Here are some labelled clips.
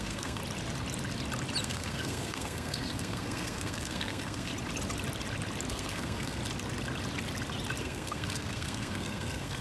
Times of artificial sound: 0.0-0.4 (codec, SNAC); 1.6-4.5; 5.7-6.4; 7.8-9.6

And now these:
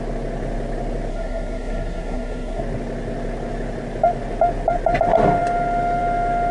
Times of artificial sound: 1.1-2.6 (codec, SNAC)

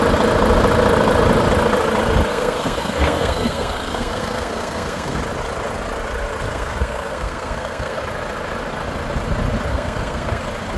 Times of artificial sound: 2.3-5.2 (codec, SNAC); 6.5-8.0; 9.7-10.4